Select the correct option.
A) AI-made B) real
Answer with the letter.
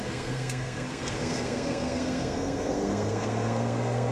A